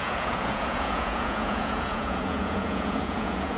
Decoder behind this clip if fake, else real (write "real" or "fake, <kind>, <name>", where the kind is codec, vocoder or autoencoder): fake, vocoder, Vocos